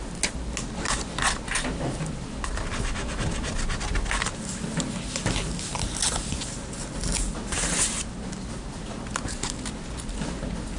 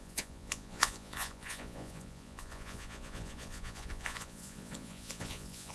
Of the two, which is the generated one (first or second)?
second